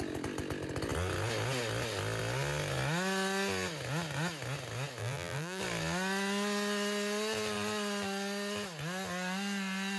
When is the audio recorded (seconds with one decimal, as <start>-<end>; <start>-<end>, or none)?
0.0-5.0; 5.6-10.0